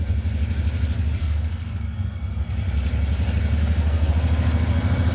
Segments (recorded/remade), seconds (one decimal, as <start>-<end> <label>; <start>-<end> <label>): 0.0-1.2 recorded; 1.2-2.2 remade; 2.2-3.6 recorded; 3.6-4.1 remade; 4.1-5.1 recorded